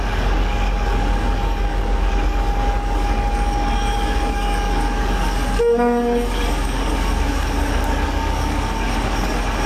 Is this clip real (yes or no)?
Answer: no